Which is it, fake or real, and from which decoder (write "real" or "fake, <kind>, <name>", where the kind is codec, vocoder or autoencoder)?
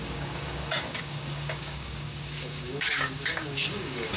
fake, codec, DAC